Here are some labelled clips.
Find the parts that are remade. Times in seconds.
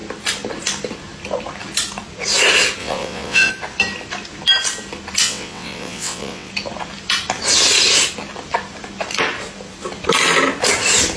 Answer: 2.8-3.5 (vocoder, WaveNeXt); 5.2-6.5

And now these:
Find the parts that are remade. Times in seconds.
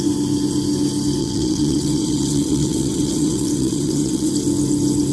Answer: 1.2-4.3 (vocoder, WaveNeXt)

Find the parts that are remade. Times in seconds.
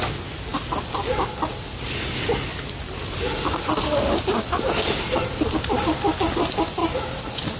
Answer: none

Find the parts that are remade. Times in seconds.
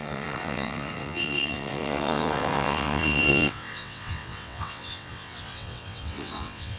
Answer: 0.0-6.8 (vocoder, WaveNeXt)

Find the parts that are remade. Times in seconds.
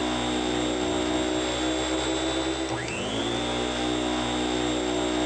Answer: none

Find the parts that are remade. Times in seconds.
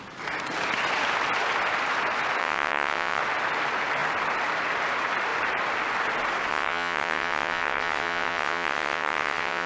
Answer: 2.4-3.2 (vocoder, WaveNeXt); 6.5-9.7